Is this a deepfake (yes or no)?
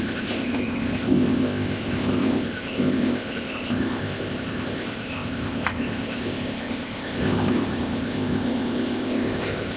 yes